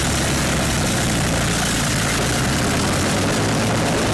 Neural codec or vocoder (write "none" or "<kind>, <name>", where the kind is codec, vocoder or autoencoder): none